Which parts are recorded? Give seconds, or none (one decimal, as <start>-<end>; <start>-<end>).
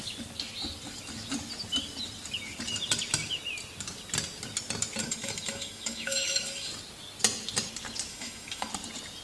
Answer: 0.0-5.0; 6.7-8.1; 8.7-9.2